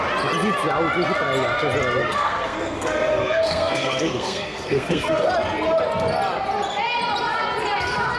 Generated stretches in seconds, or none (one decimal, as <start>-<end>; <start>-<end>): 2.0-5.3